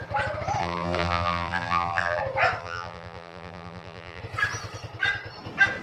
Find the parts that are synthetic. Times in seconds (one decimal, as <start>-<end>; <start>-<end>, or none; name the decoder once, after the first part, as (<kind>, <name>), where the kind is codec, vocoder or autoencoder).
0.6-2.2 (vocoder, BigVGAN v2); 2.6-4.2